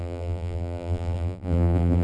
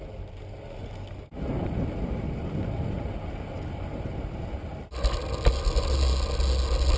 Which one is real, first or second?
second